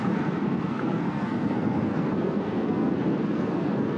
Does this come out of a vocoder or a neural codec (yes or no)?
yes